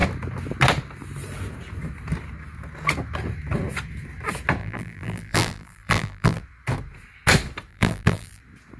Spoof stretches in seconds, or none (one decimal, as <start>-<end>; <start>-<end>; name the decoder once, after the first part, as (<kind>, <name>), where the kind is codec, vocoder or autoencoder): 4.6-6.4 (vocoder, BigVGAN v2); 7.7-8.4